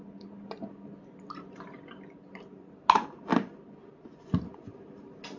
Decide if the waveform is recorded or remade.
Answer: recorded